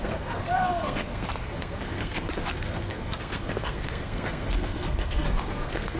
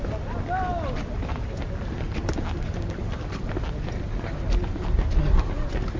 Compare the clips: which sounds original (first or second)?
second